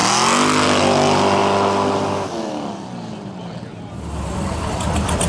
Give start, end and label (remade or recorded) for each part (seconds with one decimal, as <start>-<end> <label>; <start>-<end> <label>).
0.0-5.3 recorded